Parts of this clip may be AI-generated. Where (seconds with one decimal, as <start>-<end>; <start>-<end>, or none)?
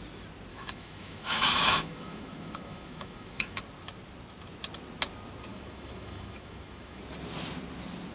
0.5-3.6; 5.5-7.0